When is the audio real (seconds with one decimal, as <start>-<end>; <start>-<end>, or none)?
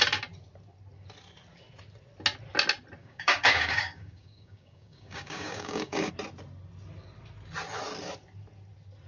0.0-3.0; 6.1-9.1